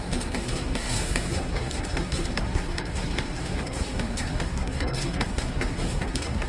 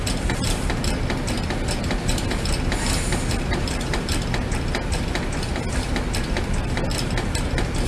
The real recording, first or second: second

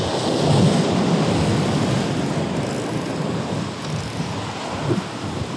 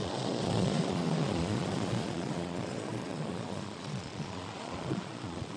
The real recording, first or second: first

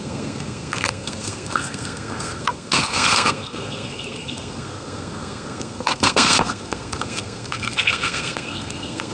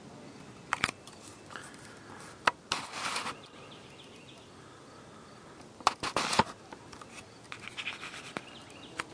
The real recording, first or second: second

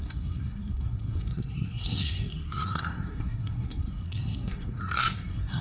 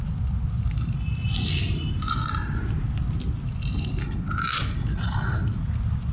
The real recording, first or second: second